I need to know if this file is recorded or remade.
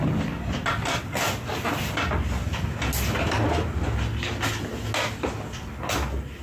recorded